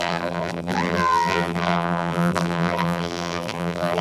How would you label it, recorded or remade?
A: remade